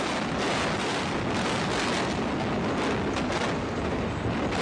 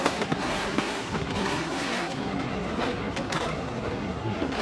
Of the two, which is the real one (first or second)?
first